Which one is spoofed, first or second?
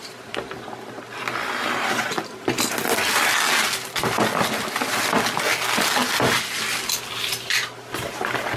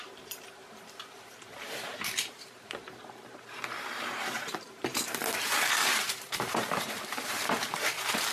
second